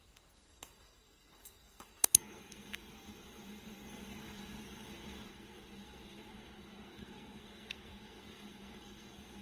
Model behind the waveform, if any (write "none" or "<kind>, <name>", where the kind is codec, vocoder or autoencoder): codec, SNAC